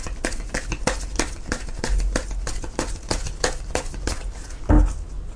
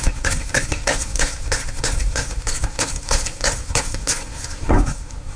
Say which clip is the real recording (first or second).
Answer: first